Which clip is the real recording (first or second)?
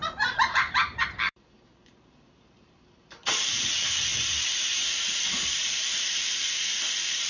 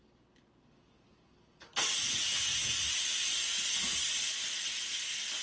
second